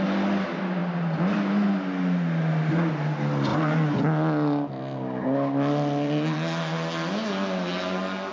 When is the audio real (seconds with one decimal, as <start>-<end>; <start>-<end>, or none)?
0.0-8.3